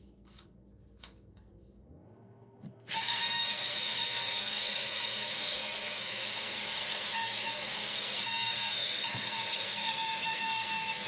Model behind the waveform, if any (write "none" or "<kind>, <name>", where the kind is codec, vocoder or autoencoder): codec, SNAC